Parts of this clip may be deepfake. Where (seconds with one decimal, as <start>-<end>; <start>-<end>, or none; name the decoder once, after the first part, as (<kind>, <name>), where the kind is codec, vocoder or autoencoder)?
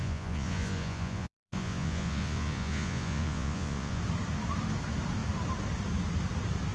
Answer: 0.0-4.0 (vocoder, Vocos)